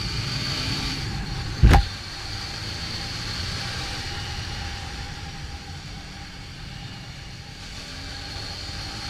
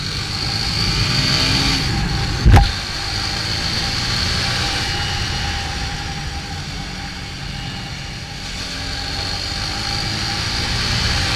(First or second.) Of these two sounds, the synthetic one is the first